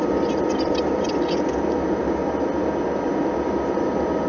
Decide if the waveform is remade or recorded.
recorded